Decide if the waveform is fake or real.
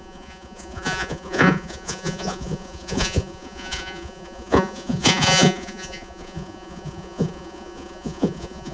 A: fake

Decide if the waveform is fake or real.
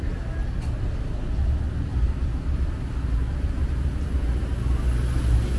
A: real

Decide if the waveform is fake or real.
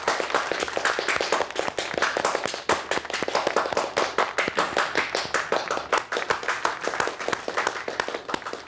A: real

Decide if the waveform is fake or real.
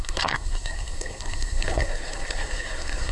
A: fake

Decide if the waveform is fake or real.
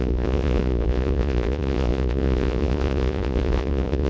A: fake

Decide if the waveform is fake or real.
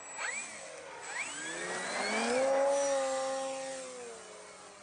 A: real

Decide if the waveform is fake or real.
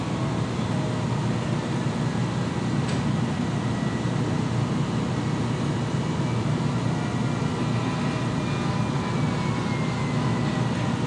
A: real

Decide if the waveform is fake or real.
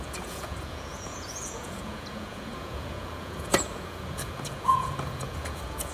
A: fake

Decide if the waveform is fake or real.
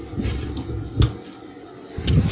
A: real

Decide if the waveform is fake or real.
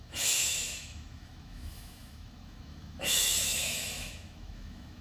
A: fake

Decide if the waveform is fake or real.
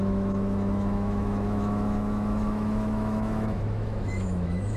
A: fake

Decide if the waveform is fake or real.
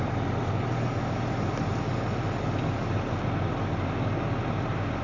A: real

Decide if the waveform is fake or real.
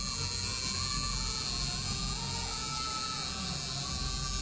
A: real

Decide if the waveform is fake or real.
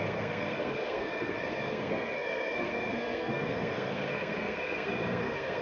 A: fake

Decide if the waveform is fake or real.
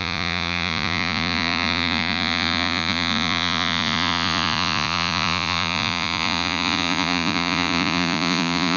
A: fake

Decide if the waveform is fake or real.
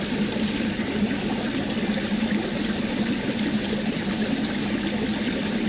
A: real